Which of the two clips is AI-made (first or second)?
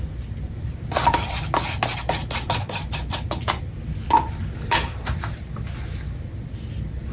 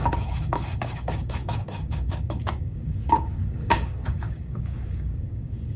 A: second